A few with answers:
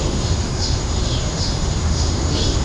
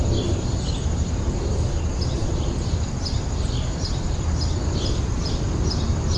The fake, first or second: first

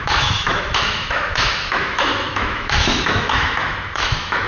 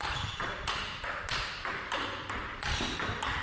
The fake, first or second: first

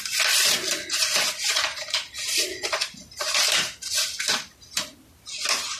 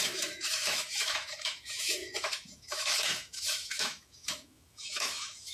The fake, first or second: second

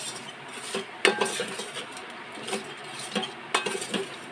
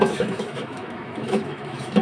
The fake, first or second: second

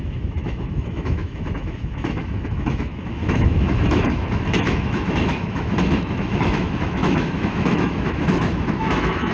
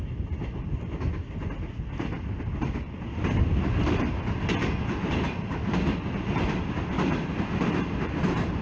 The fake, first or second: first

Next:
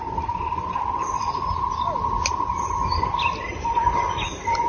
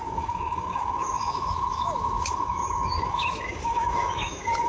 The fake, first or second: second